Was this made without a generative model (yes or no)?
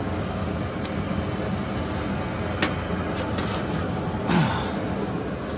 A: yes